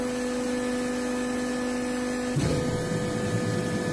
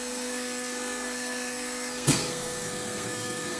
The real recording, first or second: first